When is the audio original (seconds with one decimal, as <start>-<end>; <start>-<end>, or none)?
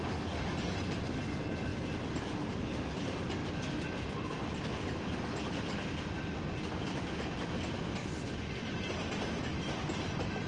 0.0-8.0; 8.5-10.5